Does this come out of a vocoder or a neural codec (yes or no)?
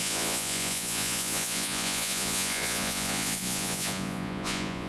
yes